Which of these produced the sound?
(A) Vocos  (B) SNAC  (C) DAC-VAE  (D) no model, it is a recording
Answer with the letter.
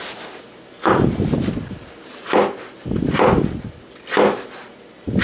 D